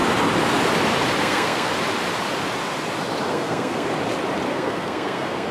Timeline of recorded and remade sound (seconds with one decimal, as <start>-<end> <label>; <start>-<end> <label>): 0.0-1.2 recorded; 1.2-1.7 remade; 1.7-3.3 recorded; 3.3-3.9 remade; 3.9-4.5 recorded; 4.5-5.5 remade

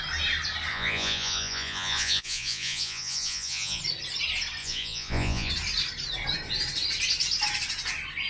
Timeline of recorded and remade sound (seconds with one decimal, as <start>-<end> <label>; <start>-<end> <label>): 0.0-0.7 recorded; 0.7-3.8 remade; 3.8-4.6 recorded; 4.6-5.5 remade; 5.5-8.3 recorded

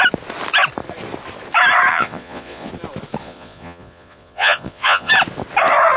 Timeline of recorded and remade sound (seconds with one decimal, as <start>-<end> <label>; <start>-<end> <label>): 0.0-1.9 recorded; 1.9-2.7 remade; 2.7-3.2 recorded; 3.2-5.1 remade; 5.1-6.0 recorded

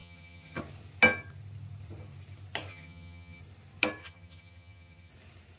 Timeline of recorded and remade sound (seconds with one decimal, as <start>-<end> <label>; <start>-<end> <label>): 0.0-0.6 remade; 0.6-2.7 recorded; 2.7-3.4 remade; 3.4-4.0 recorded; 4.0-5.1 remade; 5.1-5.6 recorded

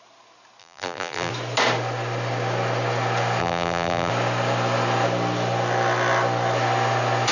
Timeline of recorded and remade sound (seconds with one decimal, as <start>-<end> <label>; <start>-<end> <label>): 0.0-0.6 recorded; 0.6-1.3 remade; 1.3-3.4 recorded; 3.4-4.1 remade; 4.1-7.3 recorded

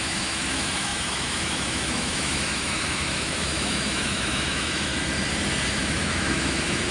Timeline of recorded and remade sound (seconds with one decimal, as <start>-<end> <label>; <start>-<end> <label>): 0.0-4.9 remade; 4.9-5.7 recorded; 5.7-6.9 remade